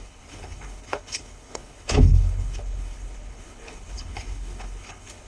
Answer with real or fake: fake